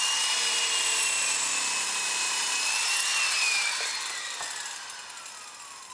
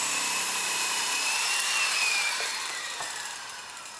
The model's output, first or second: second